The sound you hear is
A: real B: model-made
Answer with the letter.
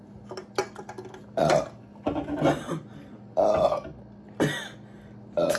A